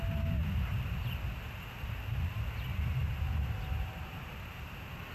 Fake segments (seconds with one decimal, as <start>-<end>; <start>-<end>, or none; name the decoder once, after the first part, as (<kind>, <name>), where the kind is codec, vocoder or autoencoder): 3.0-5.1 (vocoder, BigVGAN v2)